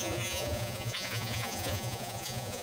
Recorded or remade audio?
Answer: remade